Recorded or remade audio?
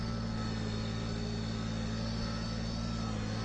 recorded